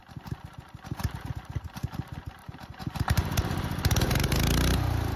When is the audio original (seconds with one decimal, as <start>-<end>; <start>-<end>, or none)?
0.0-2.4